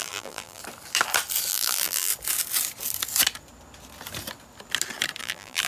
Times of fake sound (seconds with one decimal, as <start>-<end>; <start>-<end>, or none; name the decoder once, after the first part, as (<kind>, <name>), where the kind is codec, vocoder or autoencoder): 0.0-0.6 (vocoder, BigVGAN v2); 1.5-2.1; 5.2-5.7